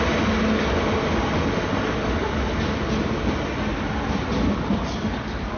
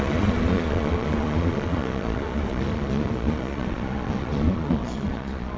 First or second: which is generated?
second